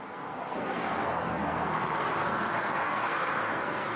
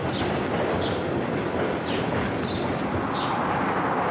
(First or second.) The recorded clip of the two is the second